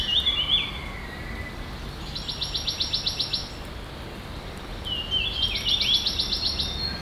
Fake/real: real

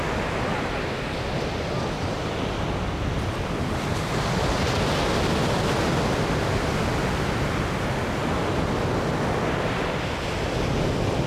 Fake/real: real